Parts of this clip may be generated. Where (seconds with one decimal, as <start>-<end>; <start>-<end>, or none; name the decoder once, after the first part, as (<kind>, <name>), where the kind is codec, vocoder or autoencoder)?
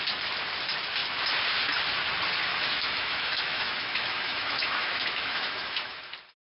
2.5-6.0 (autoencoder, DAC-VAE)